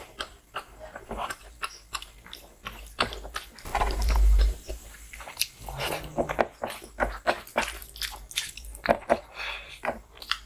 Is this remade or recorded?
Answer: recorded